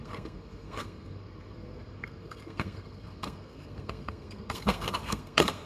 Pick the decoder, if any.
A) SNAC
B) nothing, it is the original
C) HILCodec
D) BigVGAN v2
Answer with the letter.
A